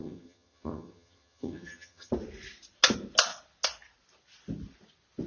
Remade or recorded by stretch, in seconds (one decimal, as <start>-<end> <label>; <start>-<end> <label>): 0.0-2.1 remade; 2.1-5.3 recorded